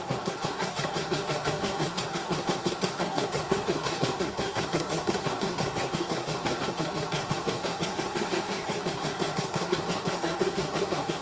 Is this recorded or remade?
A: remade